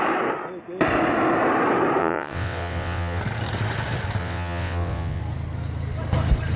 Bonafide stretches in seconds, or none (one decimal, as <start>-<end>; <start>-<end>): 0.0-2.0; 3.2-4.2; 5.2-6.6